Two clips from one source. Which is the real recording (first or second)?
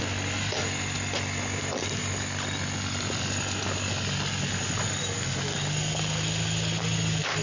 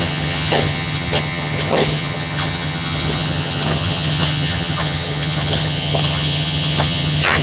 first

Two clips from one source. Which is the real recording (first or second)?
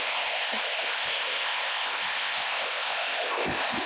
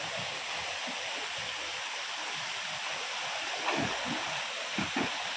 second